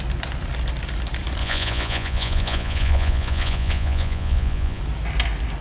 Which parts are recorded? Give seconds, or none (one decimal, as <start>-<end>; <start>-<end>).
0.0-1.4; 4.8-5.6